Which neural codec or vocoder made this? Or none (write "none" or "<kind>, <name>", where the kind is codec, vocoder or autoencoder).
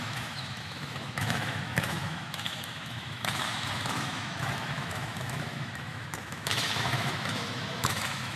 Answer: autoencoder, DAC-VAE